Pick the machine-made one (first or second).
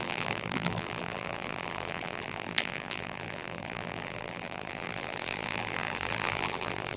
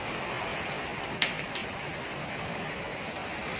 first